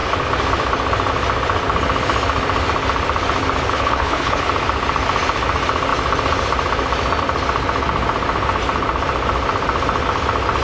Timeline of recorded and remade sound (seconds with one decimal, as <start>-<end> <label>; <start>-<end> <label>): 0.0-3.7 recorded; 3.7-4.4 remade; 4.4-10.6 recorded